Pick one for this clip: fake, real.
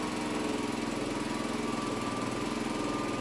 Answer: real